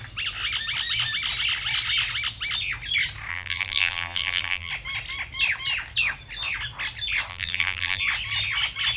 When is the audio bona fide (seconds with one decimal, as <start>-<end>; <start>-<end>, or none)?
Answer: 0.0-3.3; 4.7-7.3; 8.0-9.0